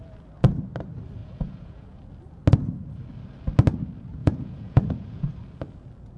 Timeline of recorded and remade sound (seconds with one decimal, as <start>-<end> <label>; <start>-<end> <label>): 0.0-1.2 recorded; 1.2-2.0 remade; 2.0-4.2 recorded; 4.2-5.3 remade; 5.3-6.2 recorded